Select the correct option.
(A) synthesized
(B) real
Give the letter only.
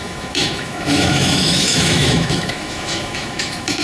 A